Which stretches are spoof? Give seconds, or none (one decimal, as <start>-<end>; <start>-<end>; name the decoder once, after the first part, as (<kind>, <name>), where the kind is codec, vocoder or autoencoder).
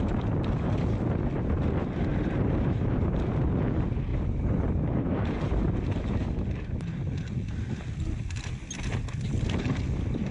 2.1-3.2 (vocoder, BigVGAN v2); 4.1-5.6